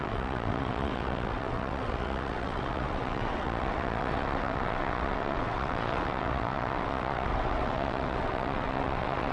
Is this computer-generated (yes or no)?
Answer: yes